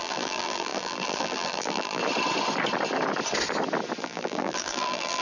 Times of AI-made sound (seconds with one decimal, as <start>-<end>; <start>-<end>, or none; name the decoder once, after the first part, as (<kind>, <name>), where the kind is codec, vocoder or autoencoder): 0.0-2.0 (vocoder, BigVGAN v2); 4.0-5.2